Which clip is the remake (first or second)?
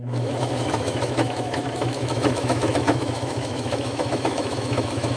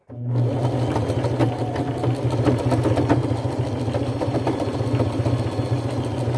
first